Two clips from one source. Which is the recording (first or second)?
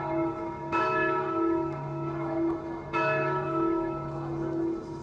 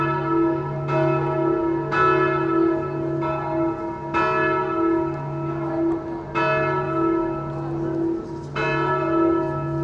second